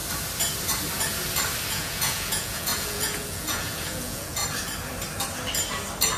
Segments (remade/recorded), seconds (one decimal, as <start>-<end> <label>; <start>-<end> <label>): 0.0-1.7 recorded; 1.7-4.4 remade; 4.4-6.2 recorded